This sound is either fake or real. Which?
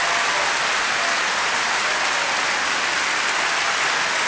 real